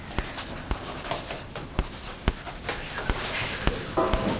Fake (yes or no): no